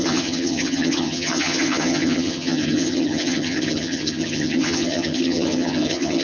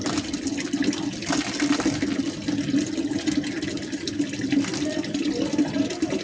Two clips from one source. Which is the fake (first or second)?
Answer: first